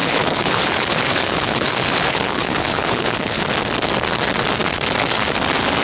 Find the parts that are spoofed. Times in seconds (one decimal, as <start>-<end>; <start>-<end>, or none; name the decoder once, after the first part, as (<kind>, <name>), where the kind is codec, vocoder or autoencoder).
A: 0.0-3.4 (codec, HILCodec)